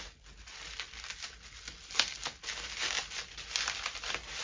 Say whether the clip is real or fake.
real